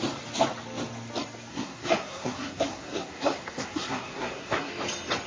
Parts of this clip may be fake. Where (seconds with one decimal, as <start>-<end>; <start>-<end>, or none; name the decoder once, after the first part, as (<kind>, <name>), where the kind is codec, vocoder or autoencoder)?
1.5-4.7 (codec, SNAC)